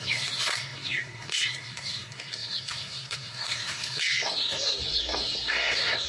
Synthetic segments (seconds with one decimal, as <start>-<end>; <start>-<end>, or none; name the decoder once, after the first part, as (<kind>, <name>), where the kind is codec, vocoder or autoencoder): 0.0-6.1 (codec, SNAC)